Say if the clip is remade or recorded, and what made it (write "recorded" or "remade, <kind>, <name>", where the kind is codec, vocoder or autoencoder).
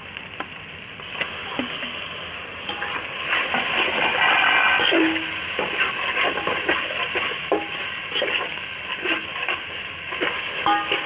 remade, vocoder, BigVGAN v2